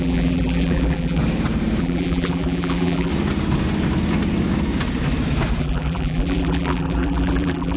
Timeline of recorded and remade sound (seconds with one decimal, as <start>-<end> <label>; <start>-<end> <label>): 0.0-1.2 remade; 1.2-1.8 recorded; 1.8-3.1 remade; 3.1-5.6 recorded; 5.6-7.8 remade